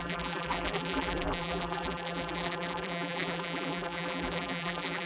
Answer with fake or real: fake